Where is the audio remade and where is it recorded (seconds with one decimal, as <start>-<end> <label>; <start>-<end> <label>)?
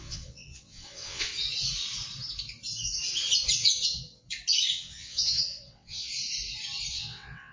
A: 0.0-1.3 remade; 1.3-3.8 recorded; 3.8-4.2 remade; 4.2-4.7 recorded; 4.7-6.1 remade; 6.1-6.9 recorded; 6.9-7.5 remade